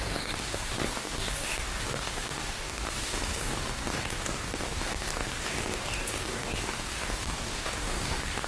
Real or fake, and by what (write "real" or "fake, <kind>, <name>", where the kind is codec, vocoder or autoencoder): fake, codec, DAC